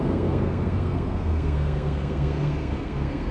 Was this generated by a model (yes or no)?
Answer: yes